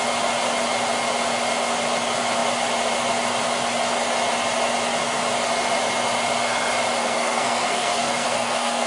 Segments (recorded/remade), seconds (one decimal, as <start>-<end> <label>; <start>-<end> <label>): 0.0-7.0 recorded; 7.0-8.9 remade